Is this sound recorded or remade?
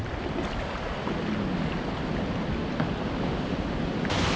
recorded